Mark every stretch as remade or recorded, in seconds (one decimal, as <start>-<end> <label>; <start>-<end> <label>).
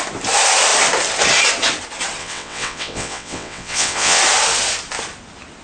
0.0-2.2 recorded; 2.2-4.2 remade; 4.2-5.6 recorded